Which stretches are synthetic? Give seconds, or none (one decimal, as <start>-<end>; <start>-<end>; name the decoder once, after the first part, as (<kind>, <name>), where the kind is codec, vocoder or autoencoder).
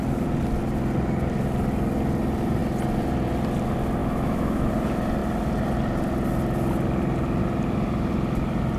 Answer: 4.0-4.7 (autoencoder, DAC-VAE)